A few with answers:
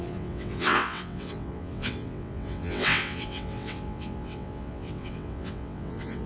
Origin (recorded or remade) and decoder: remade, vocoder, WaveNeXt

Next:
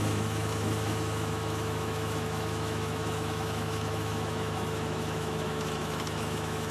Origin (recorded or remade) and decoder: remade, autoencoder, DAC-VAE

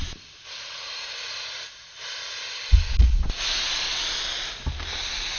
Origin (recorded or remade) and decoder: recorded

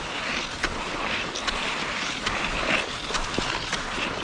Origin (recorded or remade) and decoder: recorded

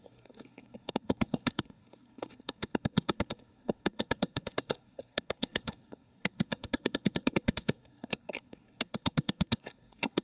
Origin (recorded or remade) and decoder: remade, codec, SNAC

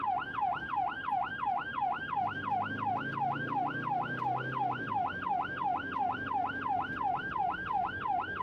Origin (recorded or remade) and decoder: recorded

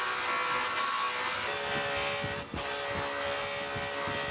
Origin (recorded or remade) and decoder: recorded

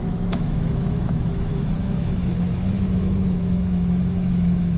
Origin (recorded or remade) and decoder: remade, autoencoder, DAC-VAE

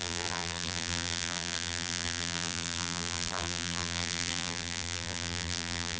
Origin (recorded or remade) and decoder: remade, vocoder, BigVGAN v2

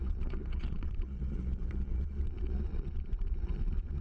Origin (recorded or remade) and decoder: remade, vocoder, Vocos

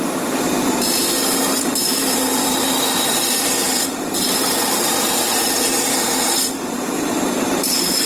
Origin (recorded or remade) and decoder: remade, vocoder, BigVGAN v2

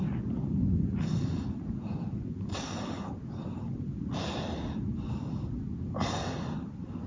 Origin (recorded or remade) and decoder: recorded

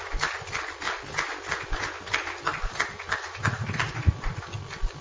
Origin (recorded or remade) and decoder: recorded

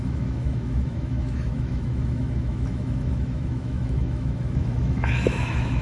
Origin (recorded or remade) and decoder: remade, autoencoder, DAC-VAE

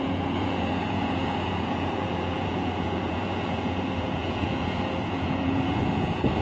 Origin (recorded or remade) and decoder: remade, vocoder, Vocos